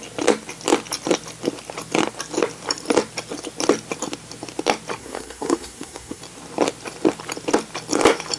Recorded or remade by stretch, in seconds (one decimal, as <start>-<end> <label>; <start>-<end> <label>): 0.0-5.0 recorded; 5.0-6.2 remade; 6.2-8.4 recorded